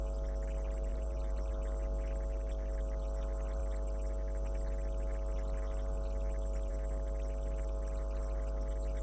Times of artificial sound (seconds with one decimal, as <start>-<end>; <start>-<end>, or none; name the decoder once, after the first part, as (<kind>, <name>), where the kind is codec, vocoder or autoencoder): 0.9-1.5 (vocoder, BigVGAN v2)